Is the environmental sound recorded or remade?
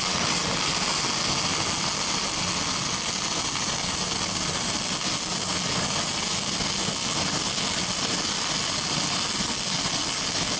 recorded